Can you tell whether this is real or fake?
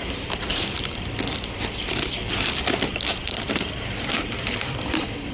fake